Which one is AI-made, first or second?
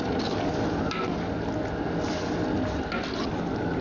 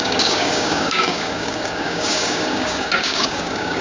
second